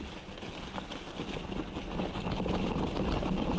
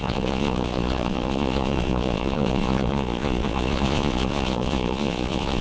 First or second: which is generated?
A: second